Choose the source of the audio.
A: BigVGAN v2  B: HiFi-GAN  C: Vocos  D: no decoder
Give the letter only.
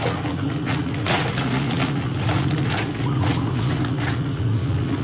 C